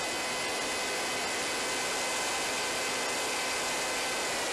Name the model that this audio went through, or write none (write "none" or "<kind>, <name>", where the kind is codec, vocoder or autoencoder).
none